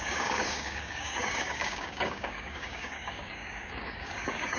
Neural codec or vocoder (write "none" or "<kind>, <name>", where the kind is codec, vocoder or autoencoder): codec, DAC